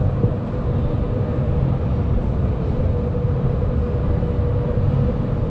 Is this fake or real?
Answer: real